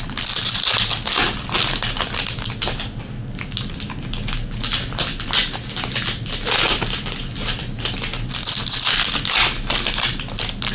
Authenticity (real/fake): real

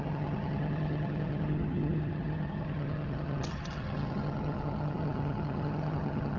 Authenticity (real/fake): fake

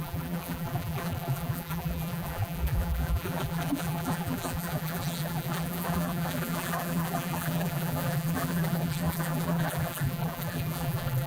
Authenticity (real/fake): fake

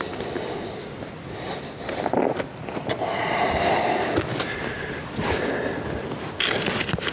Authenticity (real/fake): real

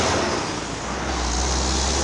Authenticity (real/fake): real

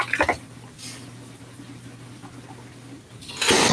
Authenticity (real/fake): real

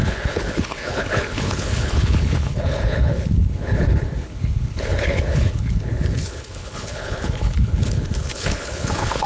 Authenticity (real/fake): fake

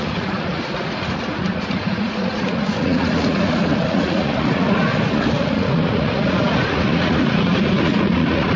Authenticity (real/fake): fake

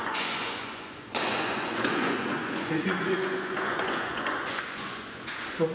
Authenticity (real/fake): fake